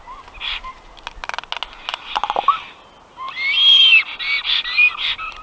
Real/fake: real